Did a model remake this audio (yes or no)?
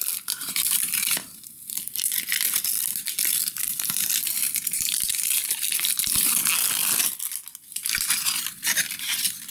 no